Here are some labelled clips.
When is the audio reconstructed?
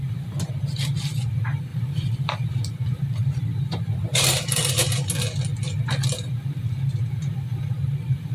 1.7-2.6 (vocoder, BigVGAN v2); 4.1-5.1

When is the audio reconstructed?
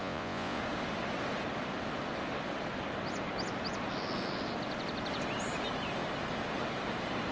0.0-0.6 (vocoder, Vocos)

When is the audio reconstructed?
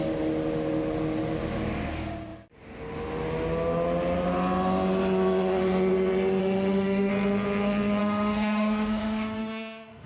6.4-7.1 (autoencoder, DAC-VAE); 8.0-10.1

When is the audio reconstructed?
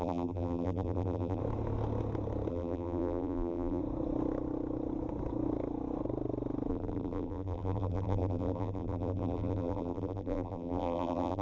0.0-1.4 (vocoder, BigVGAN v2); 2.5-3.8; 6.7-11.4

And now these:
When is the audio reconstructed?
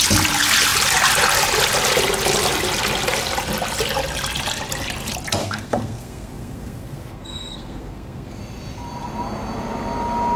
5.4-8.4 (codec, SNAC)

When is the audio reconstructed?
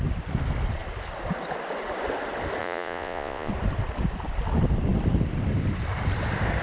2.6-3.5 (vocoder, Vocos)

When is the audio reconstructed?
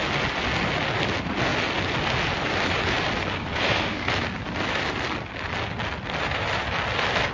3.3-4.1 (codec, SNAC)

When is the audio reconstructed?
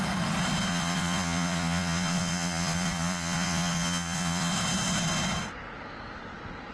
0.7-4.5 (vocoder, Vocos)